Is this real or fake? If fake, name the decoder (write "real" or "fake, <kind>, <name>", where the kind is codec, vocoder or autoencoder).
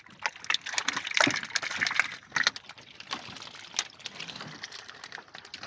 real